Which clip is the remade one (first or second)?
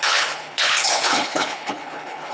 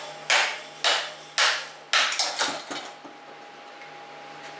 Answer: first